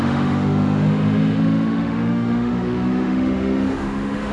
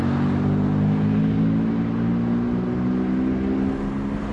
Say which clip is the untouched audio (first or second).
second